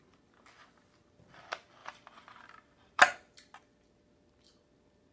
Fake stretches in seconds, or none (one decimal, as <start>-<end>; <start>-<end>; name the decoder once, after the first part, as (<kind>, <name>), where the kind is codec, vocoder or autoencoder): 1.8-3.0 (vocoder, BigVGAN v2)